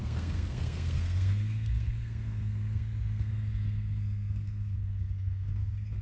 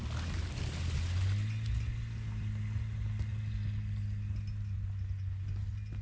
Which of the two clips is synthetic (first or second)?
first